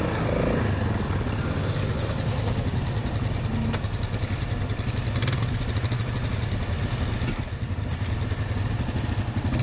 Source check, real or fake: real